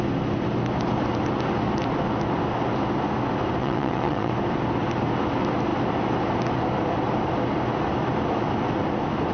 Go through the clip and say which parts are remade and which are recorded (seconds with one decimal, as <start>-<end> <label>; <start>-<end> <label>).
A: 0.0-3.6 recorded; 3.6-4.3 remade; 4.3-9.3 recorded